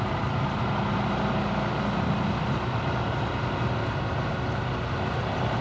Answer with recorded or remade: recorded